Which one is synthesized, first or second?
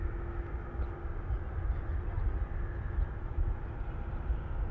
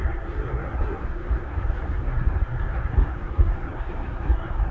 second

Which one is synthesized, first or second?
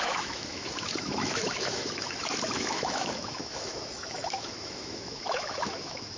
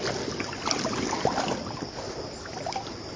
first